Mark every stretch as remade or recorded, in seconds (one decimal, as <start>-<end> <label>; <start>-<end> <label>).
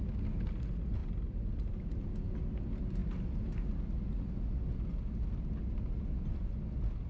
0.0-7.1 recorded